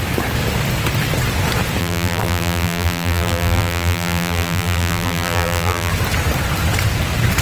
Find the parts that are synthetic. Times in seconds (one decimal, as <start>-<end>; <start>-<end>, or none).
1.8-5.9

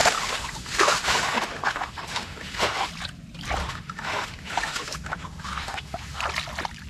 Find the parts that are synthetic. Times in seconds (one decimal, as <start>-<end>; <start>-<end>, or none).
0.0-2.9; 3.6-6.2

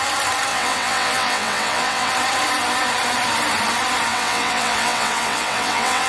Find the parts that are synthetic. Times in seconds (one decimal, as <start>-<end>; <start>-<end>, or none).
0.5-2.1; 4.1-6.1

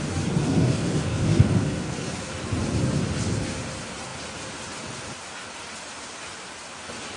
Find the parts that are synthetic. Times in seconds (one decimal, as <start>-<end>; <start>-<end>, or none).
0.4-2.3

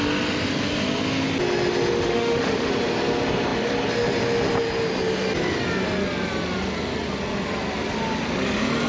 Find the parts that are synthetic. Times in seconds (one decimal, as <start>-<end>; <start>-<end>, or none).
2.0-2.7

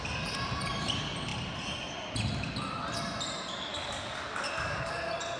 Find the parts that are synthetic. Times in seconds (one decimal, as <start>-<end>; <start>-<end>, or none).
3.7-4.9

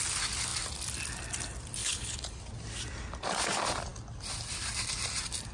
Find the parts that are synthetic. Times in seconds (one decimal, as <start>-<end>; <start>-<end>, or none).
1.8-2.4